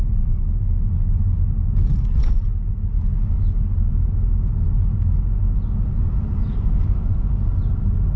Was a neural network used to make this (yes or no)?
no